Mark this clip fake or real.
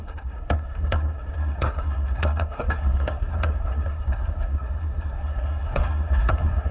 fake